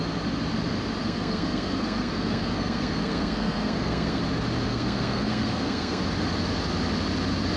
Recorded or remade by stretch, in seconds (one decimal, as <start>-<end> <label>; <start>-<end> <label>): 0.0-1.0 recorded; 1.0-4.2 remade; 4.2-4.7 recorded; 4.7-6.0 remade; 6.0-7.6 recorded